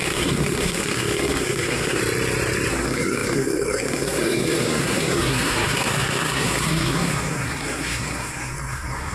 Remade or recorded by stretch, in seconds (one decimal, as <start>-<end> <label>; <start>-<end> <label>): 0.0-2.0 remade; 2.0-2.7 recorded; 2.7-9.1 remade